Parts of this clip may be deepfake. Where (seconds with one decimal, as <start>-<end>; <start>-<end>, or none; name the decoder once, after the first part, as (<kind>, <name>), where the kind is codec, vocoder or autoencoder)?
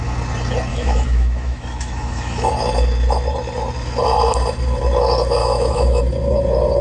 0.7-2.5 (autoencoder, DAC-VAE); 5.4-6.0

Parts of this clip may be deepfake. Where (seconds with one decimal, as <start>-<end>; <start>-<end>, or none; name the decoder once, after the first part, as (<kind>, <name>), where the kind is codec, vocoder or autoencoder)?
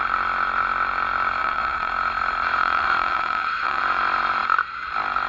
1.4-1.9 (vocoder, WaveNeXt); 2.6-3.8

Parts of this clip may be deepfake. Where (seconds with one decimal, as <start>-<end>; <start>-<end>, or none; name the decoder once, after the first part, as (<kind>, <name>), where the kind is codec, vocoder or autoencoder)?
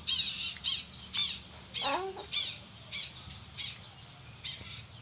none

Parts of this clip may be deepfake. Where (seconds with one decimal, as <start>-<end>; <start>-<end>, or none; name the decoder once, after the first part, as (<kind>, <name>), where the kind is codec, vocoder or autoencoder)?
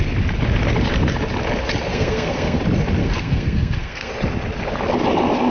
1.9-2.6 (codec, SNAC); 3.0-4.1